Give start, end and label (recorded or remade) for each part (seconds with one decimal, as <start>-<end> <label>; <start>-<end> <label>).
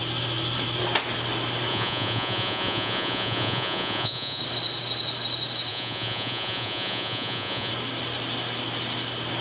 0.0-1.7 recorded; 1.7-4.4 remade; 4.4-5.7 recorded; 5.7-7.7 remade; 7.7-9.4 recorded